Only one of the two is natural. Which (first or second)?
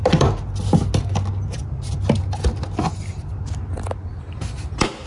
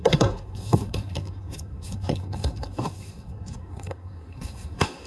first